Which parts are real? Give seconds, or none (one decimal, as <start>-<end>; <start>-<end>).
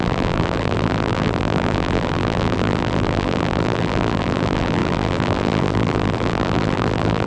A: none